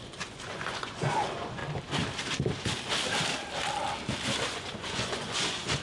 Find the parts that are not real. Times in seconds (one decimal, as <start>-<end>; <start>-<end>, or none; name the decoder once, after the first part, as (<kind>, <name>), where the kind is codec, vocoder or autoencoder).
0.0-1.6 (vocoder, Vocos); 4.5-5.8